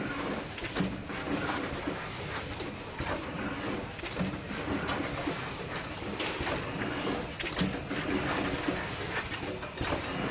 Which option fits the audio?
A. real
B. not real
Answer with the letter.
A